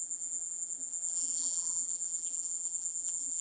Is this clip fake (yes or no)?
yes